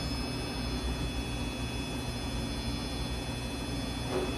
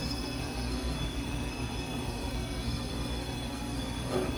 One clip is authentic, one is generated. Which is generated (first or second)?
second